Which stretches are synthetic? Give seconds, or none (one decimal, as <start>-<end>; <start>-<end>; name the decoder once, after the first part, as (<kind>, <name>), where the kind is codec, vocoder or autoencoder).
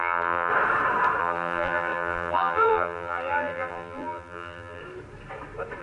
0.0-0.5 (vocoder, BigVGAN v2); 1.2-4.8